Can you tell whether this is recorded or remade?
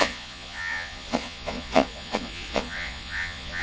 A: remade